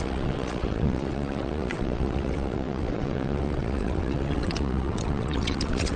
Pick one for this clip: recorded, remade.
remade